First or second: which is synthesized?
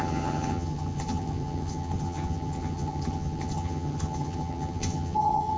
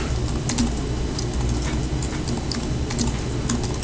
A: first